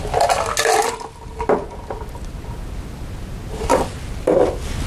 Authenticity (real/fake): real